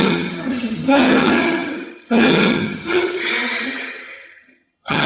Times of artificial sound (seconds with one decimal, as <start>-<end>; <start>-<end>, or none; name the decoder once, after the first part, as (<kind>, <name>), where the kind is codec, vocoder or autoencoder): 0.0-5.1 (vocoder, HiFi-GAN)

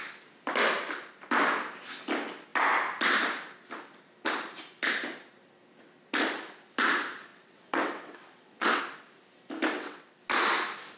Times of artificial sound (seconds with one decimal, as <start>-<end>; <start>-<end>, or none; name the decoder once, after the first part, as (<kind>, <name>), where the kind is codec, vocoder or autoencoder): 7.3-8.8 (vocoder, WaveNeXt); 9.7-10.2